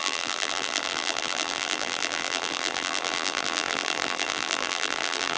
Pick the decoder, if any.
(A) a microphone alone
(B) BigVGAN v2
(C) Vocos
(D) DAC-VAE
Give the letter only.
B